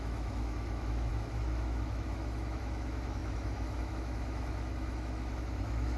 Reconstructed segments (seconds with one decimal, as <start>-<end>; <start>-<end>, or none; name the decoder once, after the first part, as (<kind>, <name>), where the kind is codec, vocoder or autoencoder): 0.0-6.0 (autoencoder, DAC-VAE)